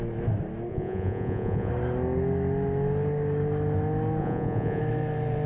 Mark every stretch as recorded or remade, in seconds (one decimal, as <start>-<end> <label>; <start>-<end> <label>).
0.0-0.7 recorded; 0.7-1.7 remade; 1.7-4.2 recorded; 4.2-4.8 remade; 4.8-5.5 recorded